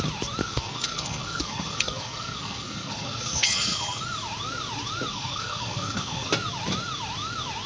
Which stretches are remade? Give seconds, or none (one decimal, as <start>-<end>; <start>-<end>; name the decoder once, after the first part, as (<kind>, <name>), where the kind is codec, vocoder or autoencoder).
0.4-4.0 (codec, SNAC); 5.1-6.3